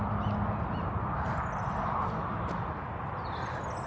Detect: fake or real real